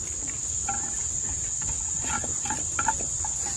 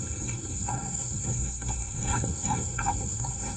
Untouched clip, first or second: first